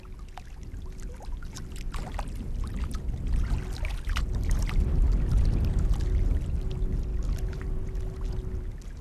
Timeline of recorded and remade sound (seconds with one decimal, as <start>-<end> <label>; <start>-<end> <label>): 0.0-9.0 recorded